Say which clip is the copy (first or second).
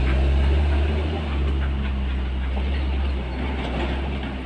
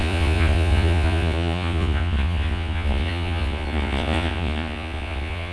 second